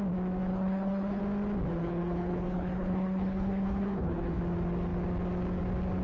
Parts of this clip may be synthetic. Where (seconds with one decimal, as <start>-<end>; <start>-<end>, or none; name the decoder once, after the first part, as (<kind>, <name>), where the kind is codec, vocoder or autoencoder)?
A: 0.5-1.2 (codec, HILCodec); 1.8-4.4

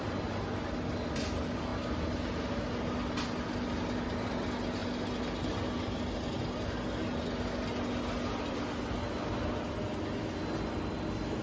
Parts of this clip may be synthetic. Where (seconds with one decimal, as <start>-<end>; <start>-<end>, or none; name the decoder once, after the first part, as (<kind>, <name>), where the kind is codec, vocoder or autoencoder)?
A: none

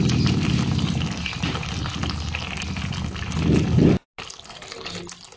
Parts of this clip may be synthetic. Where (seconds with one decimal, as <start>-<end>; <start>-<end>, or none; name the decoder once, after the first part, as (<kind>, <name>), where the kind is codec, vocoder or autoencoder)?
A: none